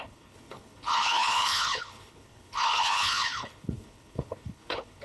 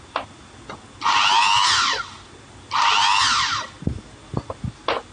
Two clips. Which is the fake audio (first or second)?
first